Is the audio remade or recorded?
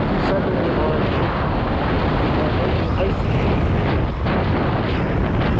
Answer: recorded